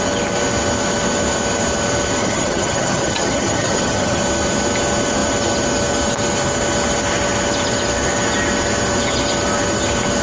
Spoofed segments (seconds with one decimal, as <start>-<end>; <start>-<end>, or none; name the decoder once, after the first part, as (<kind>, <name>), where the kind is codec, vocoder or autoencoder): 2.2-4.2 (vocoder, HiFi-GAN)